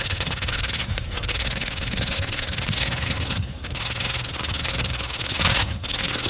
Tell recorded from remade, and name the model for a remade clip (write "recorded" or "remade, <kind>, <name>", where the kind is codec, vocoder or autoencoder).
remade, codec, SNAC